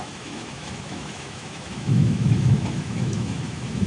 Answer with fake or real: fake